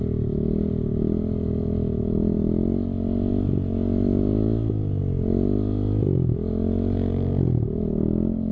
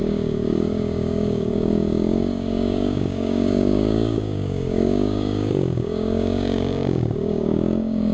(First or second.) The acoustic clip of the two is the first